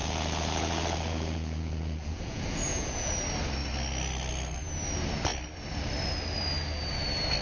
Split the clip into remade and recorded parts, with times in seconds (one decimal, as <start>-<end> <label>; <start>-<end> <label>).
0.0-3.1 remade; 3.1-7.4 recorded